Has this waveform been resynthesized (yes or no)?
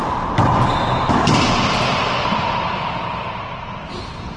no